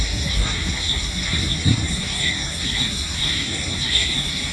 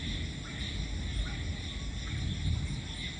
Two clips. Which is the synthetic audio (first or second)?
first